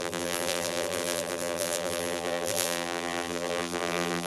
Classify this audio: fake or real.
fake